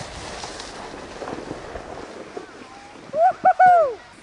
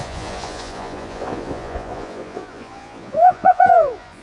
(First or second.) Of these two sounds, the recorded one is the first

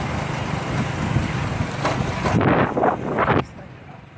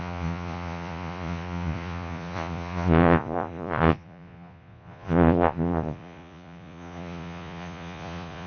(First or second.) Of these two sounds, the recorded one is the first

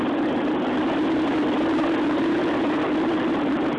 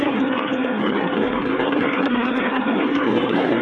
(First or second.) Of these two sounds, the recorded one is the first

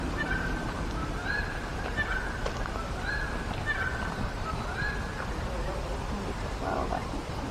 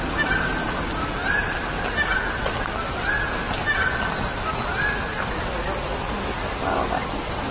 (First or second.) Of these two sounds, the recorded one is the second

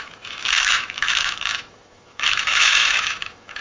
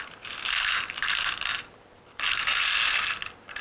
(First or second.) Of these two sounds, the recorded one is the second